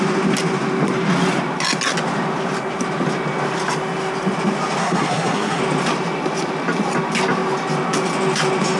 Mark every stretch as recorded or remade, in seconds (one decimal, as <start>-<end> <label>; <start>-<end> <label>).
0.0-4.8 recorded; 4.8-5.6 remade; 5.6-8.8 recorded